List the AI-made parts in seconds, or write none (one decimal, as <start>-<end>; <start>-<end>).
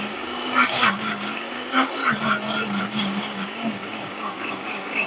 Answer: 0.0-2.0; 2.8-5.1